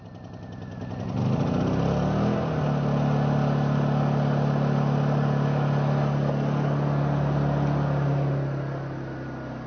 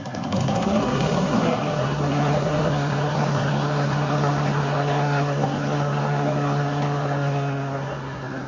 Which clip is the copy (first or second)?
second